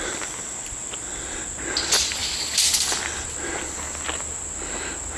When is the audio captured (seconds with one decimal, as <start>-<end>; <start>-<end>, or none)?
0.0-5.2